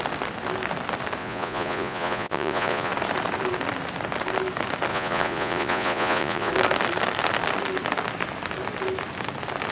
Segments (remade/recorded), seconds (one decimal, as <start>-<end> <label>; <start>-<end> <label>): 0.0-1.2 recorded; 1.2-2.9 remade; 2.9-4.9 recorded; 4.9-6.5 remade; 6.5-9.7 recorded